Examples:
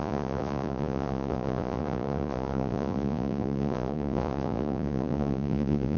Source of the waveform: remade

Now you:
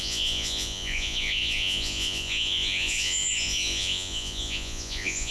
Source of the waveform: remade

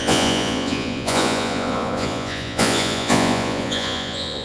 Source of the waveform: remade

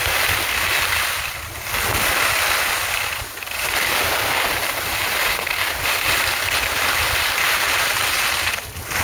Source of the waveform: recorded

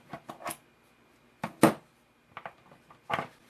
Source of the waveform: recorded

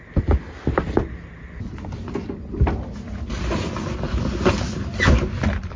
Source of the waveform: recorded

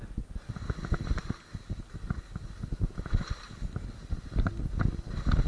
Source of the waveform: recorded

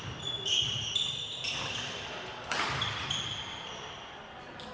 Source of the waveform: recorded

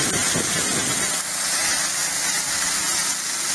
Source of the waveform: recorded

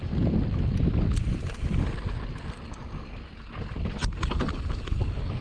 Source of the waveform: recorded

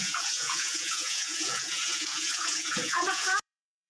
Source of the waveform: remade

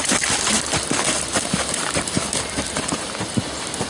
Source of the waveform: recorded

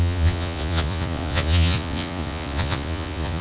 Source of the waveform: remade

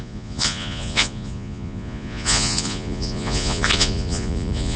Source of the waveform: remade